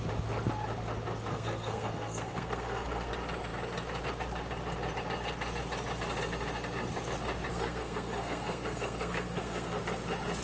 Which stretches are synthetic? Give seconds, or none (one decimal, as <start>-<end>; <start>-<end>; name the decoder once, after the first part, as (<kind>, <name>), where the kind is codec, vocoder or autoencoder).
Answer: 1.3-3.1 (codec, SNAC); 7.5-9.8